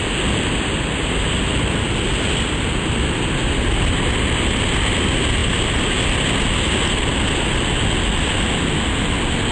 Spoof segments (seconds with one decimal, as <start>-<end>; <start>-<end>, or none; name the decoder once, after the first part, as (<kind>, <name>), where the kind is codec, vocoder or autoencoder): none